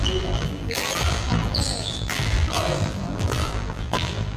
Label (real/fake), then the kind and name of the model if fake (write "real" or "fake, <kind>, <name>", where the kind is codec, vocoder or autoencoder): fake, vocoder, BigVGAN v2